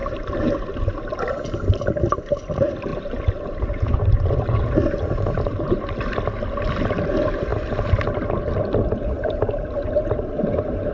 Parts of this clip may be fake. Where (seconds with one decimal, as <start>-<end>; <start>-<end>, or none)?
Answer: 0.0-1.0; 2.9-6.0